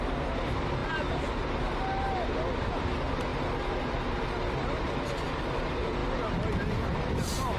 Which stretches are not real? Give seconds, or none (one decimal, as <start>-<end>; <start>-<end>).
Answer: none